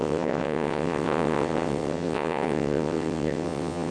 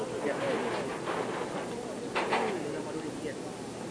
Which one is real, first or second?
second